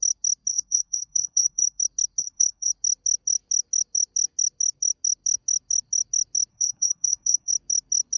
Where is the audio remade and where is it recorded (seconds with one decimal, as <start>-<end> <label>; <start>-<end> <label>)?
0.0-0.5 recorded; 0.5-1.8 remade; 1.8-2.2 recorded; 2.2-2.7 remade; 2.7-6.5 recorded; 6.5-7.5 remade; 7.5-8.2 recorded